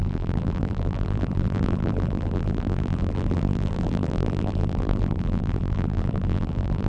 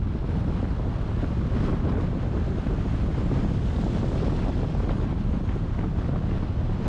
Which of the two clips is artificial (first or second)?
first